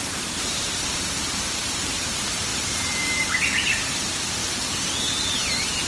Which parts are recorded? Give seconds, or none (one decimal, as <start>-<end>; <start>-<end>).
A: 4.4-5.1